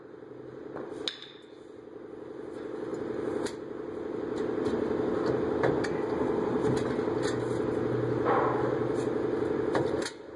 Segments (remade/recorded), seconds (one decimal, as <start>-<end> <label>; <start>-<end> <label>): 0.0-10.4 recorded